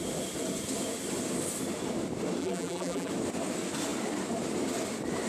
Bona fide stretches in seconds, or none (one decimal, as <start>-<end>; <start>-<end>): 0.0-2.4; 3.1-5.3

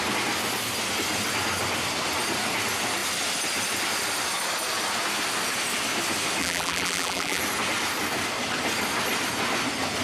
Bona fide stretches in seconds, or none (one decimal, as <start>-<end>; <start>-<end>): 0.0-6.4; 7.4-10.0

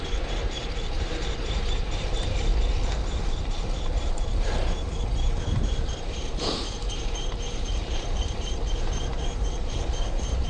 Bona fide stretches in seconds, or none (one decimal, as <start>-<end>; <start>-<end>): 2.5-3.4